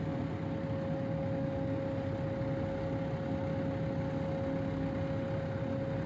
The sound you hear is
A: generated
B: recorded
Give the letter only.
B